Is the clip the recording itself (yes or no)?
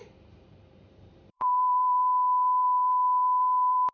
no